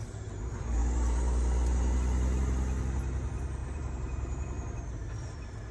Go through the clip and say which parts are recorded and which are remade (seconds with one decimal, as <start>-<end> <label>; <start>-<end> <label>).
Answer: 0.0-3.6 recorded; 3.6-5.1 remade; 5.1-5.7 recorded